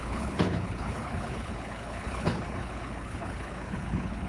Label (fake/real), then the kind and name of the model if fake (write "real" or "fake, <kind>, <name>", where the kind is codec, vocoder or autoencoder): fake, codec, HILCodec